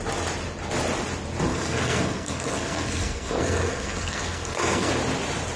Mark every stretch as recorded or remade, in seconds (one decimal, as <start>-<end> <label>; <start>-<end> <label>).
0.0-1.5 recorded; 1.5-4.9 remade; 4.9-5.6 recorded